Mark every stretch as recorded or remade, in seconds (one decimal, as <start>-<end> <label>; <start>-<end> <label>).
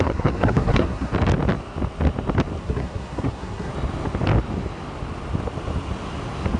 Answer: 0.0-1.1 remade; 1.1-2.6 recorded; 2.6-3.7 remade; 3.7-6.6 recorded